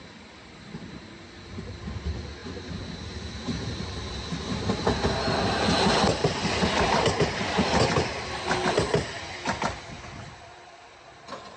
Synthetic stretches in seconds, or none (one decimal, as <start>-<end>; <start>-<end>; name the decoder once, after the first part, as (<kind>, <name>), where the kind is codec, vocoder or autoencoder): none